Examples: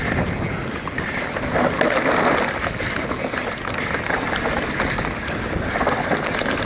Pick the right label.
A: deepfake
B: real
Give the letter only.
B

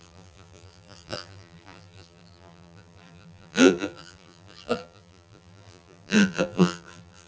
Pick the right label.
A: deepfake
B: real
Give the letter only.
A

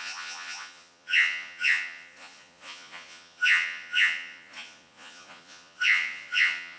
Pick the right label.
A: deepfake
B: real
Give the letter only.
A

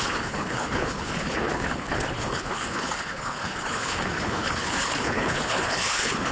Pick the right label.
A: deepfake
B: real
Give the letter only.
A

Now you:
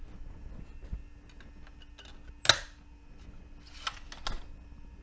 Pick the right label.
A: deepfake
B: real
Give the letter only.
B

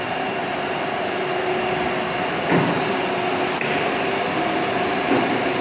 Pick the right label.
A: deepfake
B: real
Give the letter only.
B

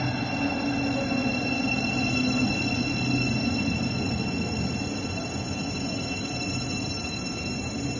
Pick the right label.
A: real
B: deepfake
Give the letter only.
A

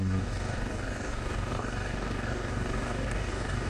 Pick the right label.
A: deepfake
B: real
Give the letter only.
A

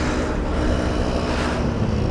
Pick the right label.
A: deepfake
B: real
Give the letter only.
B